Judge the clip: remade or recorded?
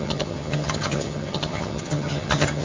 remade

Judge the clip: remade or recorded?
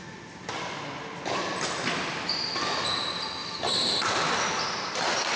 recorded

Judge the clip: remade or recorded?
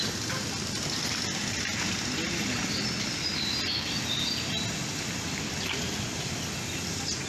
recorded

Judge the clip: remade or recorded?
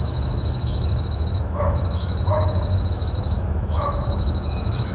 remade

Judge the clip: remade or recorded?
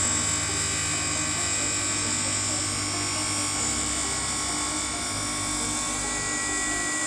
recorded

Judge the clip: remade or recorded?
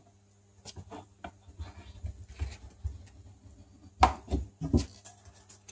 recorded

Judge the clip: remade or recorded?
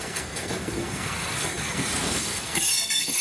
remade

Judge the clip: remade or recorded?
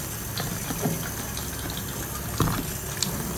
recorded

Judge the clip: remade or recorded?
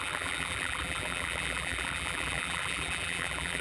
remade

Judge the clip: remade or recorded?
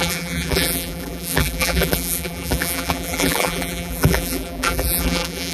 remade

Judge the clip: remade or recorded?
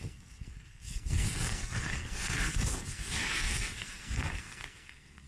remade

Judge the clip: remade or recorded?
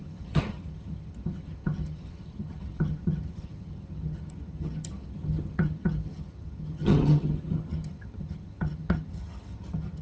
remade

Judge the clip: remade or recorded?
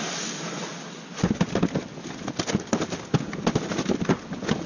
recorded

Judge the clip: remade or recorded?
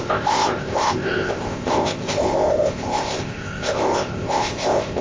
remade